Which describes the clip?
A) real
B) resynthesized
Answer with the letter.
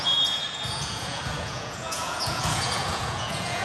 B